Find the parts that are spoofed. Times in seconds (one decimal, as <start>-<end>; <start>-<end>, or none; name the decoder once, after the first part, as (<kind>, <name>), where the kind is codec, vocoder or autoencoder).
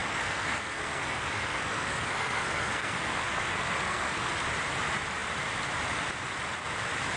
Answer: 0.0-4.3 (codec, SNAC)